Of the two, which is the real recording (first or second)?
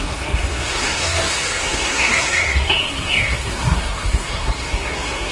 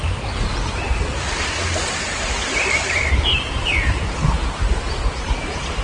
second